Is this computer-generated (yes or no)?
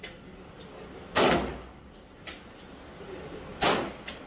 no